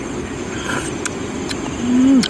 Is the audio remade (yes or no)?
no